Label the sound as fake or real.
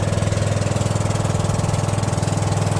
real